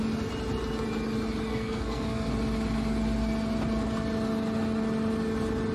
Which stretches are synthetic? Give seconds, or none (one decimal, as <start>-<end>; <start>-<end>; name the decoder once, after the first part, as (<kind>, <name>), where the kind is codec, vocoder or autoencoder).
1.5-2.3 (codec, SNAC)